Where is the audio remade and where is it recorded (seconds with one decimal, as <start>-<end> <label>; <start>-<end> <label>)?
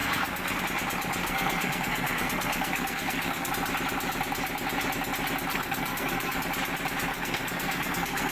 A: 0.0-0.6 remade; 0.6-1.2 recorded; 1.2-3.5 remade; 3.5-5.5 recorded; 5.5-6.4 remade; 6.4-7.1 recorded; 7.1-8.3 remade